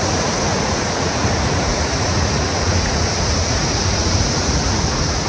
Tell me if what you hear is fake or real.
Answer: fake